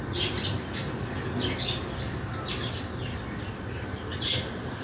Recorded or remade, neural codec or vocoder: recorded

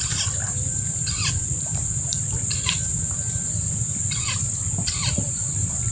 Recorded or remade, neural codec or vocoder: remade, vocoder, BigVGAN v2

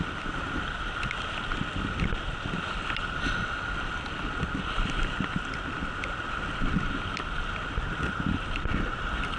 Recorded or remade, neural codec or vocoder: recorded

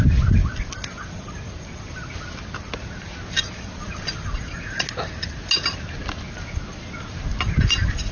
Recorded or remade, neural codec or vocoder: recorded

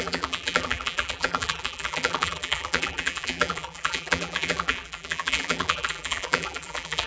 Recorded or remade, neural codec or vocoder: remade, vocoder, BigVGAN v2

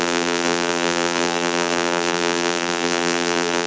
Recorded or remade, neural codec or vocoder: remade, vocoder, BigVGAN v2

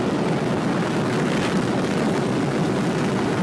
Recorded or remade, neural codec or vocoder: recorded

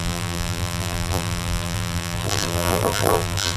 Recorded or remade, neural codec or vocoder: remade, vocoder, BigVGAN v2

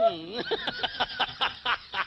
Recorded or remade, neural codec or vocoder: recorded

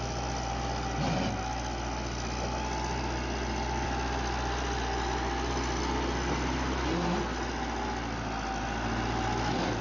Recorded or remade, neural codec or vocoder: recorded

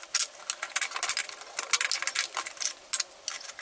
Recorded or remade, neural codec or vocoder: recorded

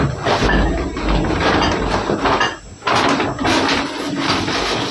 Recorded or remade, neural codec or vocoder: recorded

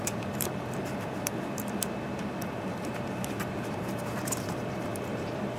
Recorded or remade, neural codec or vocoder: remade, vocoder, BigVGAN v2